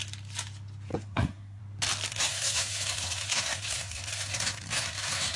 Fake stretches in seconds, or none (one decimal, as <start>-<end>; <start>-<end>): 0.9-1.6; 2.1-5.4